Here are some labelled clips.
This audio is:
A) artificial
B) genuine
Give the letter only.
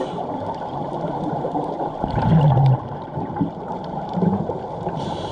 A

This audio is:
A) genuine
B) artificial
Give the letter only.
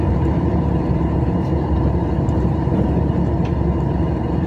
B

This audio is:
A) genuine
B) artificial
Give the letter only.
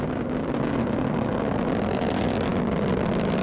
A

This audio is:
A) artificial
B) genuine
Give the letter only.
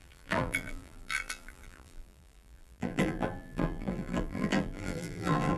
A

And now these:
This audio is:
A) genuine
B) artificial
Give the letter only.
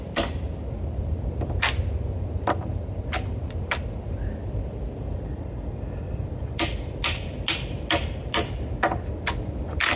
A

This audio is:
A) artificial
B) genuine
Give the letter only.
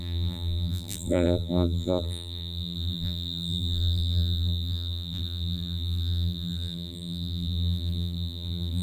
A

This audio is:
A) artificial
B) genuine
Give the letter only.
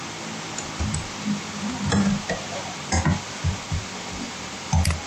B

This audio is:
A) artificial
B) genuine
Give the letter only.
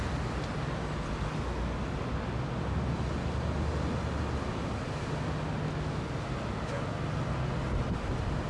B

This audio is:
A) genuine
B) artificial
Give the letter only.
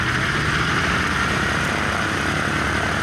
A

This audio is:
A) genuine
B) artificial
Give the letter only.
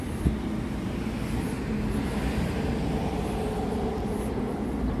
A